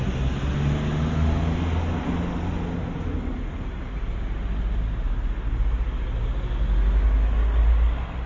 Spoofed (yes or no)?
no